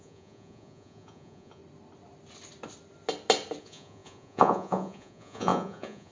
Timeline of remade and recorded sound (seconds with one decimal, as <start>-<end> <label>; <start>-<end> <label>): 0.0-1.6 remade; 1.6-3.6 recorded; 3.6-6.1 remade